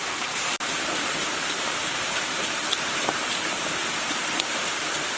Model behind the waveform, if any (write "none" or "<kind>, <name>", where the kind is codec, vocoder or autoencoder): vocoder, BigVGAN v2